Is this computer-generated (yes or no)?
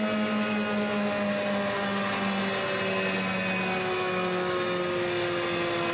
no